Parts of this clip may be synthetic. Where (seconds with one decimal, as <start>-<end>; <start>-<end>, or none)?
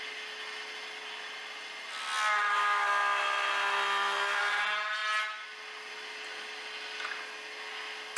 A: none